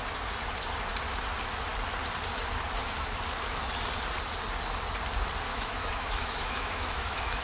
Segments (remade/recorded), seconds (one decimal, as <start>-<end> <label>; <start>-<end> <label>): 0.0-5.5 recorded; 5.5-7.4 remade